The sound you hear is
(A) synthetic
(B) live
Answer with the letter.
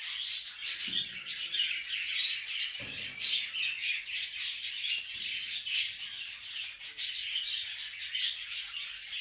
B